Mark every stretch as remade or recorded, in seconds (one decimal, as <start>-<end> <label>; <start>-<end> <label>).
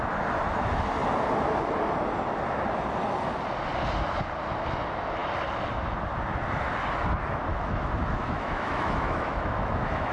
0.0-7.5 recorded; 7.5-10.1 remade